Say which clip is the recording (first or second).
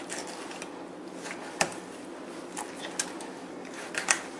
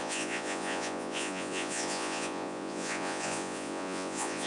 first